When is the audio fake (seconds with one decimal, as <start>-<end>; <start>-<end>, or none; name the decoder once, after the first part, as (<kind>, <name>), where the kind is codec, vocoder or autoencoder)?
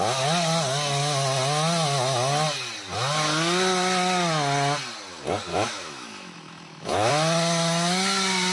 5.5-7.1 (autoencoder, DAC-VAE)